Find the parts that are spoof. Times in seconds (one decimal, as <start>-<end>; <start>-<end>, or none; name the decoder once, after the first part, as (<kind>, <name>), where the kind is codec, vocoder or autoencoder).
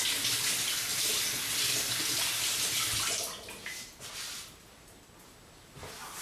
none